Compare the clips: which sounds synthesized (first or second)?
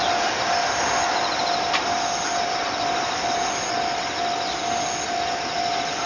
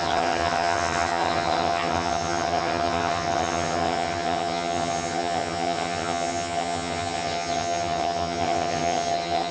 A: second